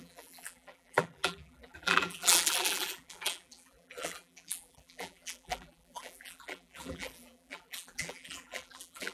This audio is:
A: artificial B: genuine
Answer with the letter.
A